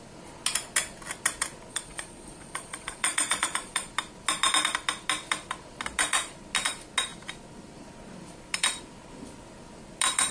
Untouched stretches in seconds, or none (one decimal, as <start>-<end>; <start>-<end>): 0.0-1.7; 3.9-10.3